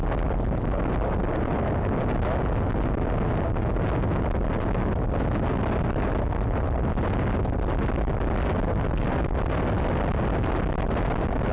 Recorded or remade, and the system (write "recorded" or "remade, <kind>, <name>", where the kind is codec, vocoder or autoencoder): recorded